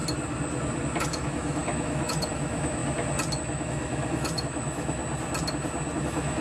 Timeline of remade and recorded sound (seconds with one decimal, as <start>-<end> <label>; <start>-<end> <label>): 0.0-1.0 recorded; 1.0-2.8 remade; 2.8-3.4 recorded; 3.4-5.0 remade; 5.0-6.0 recorded; 6.0-6.4 remade

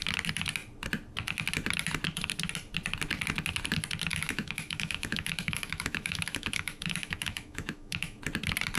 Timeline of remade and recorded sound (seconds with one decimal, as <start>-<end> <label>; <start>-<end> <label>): 0.0-4.1 recorded; 4.1-8.2 remade; 8.2-8.8 recorded

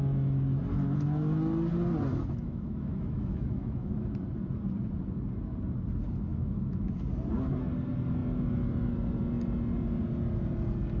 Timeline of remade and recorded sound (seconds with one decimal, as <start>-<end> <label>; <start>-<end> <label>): 0.0-2.1 recorded; 2.1-4.1 remade; 4.1-6.3 recorded; 6.3-7.0 remade; 7.0-11.0 recorded

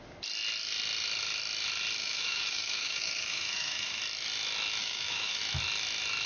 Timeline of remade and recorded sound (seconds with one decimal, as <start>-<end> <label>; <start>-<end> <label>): 0.0-2.0 recorded; 2.0-4.0 remade; 4.0-4.8 recorded; 4.8-5.4 remade; 5.4-6.3 recorded

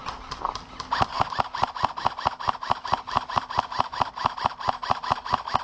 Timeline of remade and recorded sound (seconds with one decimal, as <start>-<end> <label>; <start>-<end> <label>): 0.0-5.6 recorded

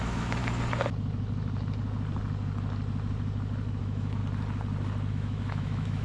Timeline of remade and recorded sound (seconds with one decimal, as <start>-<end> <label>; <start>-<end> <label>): 0.0-0.4 remade; 0.4-3.8 recorded; 3.8-4.2 remade; 4.2-5.1 recorded; 5.1-6.0 remade

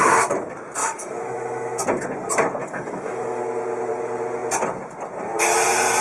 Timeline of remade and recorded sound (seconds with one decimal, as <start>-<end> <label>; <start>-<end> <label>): 0.0-0.8 recorded; 0.8-1.8 remade; 1.8-2.6 recorded; 2.6-3.4 remade; 3.4-6.0 recorded